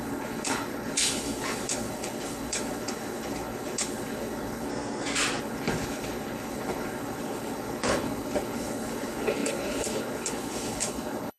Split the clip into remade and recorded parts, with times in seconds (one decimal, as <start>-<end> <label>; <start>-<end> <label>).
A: 0.0-4.7 remade; 4.7-5.4 recorded; 5.4-11.4 remade